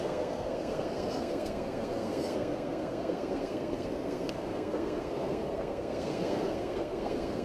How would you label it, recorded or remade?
remade